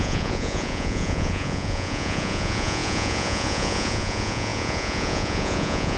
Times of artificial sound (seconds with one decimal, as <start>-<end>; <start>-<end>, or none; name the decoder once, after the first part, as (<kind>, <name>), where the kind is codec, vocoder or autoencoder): 0.0-6.0 (vocoder, Vocos)